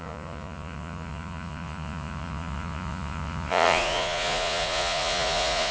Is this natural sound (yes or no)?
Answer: no